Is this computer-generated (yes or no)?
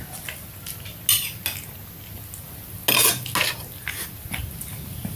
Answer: no